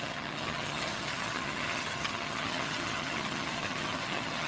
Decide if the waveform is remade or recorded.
remade